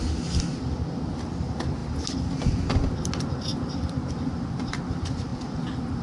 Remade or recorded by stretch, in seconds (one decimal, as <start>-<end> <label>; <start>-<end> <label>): 0.0-1.8 recorded; 1.8-3.1 remade; 3.1-6.0 recorded